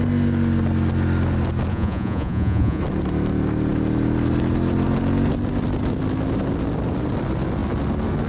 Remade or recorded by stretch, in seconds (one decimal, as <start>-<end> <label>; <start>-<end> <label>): 0.0-1.7 recorded; 1.7-2.8 remade; 2.8-8.3 recorded